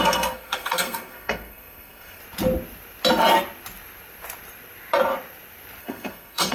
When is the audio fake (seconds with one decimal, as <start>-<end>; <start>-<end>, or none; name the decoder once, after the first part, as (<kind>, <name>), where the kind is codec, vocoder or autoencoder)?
0.0-2.2 (codec, SNAC); 5.8-6.5